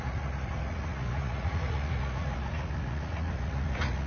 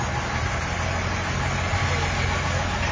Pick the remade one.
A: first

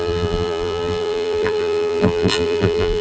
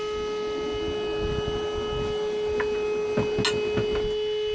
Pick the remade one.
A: first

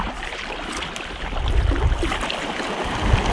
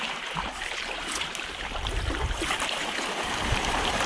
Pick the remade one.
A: second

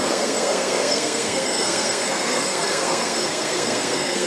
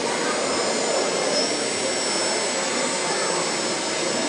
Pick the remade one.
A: first